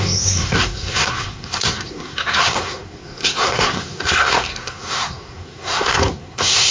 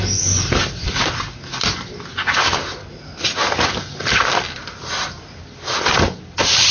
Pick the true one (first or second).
second